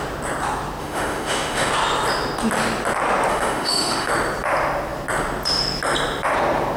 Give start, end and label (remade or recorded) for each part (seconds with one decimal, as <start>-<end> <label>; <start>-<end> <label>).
0.0-0.8 recorded; 0.8-1.7 remade; 1.7-3.3 recorded; 3.3-4.1 remade; 4.1-6.8 recorded